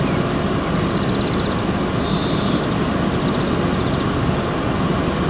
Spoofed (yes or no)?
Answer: no